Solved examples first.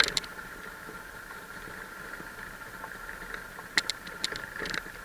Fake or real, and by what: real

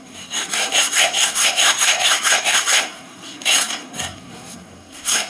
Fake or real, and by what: fake, codec, SNAC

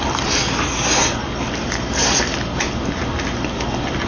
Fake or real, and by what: real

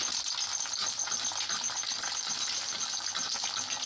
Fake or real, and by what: real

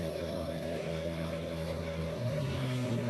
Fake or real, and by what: fake, codec, SNAC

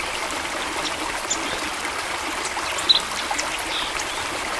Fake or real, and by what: real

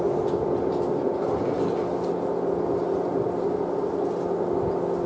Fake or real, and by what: real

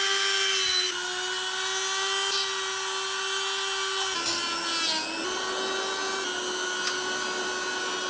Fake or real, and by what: real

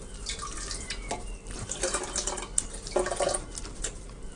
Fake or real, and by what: real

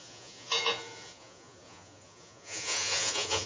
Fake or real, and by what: fake, vocoder, Vocos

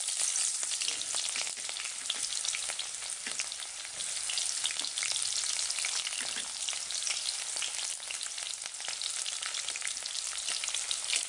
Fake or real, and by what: real